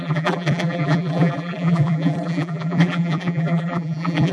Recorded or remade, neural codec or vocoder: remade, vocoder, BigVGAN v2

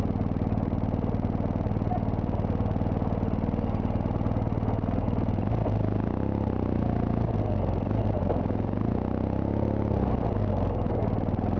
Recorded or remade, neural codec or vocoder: recorded